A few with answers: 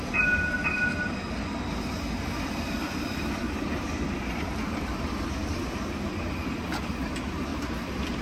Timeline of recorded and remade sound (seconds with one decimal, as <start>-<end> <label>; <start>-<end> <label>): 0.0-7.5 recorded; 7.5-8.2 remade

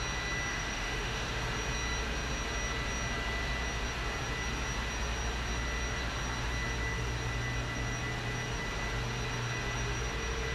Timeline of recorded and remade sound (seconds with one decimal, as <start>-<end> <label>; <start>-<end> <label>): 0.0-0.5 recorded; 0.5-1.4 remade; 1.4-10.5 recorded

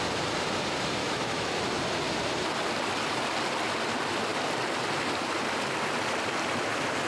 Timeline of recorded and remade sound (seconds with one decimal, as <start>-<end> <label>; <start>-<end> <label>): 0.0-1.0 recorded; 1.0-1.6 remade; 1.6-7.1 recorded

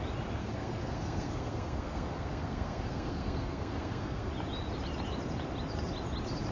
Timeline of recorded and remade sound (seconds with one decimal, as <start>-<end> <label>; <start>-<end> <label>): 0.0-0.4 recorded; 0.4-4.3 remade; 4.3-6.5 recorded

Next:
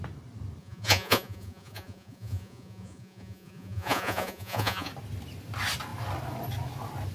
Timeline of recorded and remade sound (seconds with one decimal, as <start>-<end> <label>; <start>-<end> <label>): 0.0-0.6 recorded; 0.6-4.9 remade; 4.9-7.1 recorded

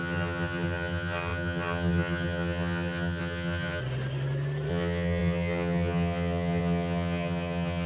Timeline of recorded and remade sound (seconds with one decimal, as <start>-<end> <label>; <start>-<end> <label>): 0.0-3.8 remade; 3.8-4.7 recorded; 4.7-7.9 remade

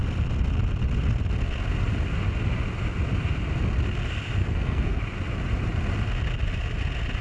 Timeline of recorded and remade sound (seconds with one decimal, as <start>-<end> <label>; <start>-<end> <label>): 0.0-4.4 recorded; 4.4-5.0 remade; 5.0-7.2 recorded

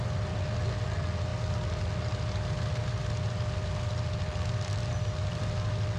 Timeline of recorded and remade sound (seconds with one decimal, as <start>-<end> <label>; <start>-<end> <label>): 0.0-6.0 recorded